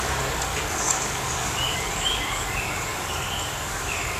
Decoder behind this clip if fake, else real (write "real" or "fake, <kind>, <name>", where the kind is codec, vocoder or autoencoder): fake, codec, DAC